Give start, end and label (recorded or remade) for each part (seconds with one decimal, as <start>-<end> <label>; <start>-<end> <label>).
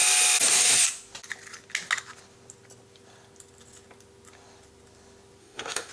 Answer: 0.0-5.4 recorded; 5.4-5.9 remade